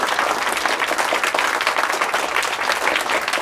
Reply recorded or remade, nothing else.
recorded